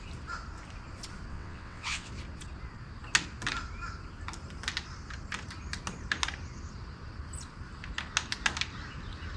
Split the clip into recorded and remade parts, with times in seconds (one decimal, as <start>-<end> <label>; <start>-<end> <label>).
0.0-1.3 recorded; 1.3-2.1 remade; 2.1-9.4 recorded